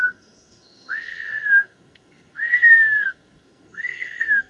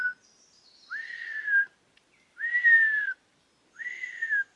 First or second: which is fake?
first